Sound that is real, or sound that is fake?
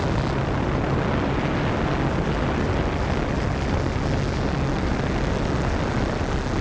real